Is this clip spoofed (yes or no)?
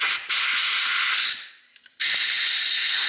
no